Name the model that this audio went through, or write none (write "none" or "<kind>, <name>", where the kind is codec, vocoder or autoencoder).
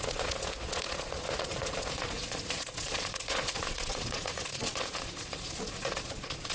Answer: vocoder, Vocos